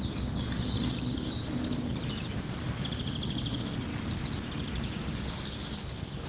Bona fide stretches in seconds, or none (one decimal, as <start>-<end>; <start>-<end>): 0.0-6.3